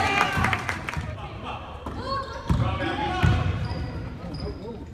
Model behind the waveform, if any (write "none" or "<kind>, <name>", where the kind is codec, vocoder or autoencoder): vocoder, BigVGAN v2